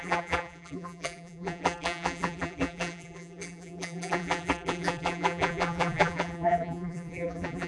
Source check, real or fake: fake